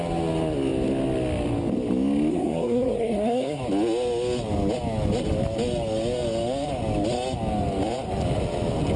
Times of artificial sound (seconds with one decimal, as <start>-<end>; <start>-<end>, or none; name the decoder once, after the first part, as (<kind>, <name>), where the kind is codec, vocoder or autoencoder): 2.3-3.6 (codec, SNAC)